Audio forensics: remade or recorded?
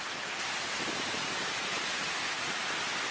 recorded